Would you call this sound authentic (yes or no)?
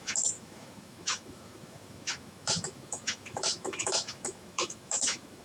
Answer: no